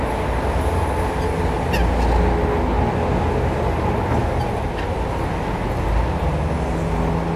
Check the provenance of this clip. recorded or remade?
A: recorded